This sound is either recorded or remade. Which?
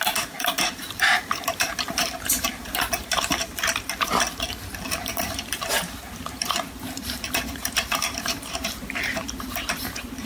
remade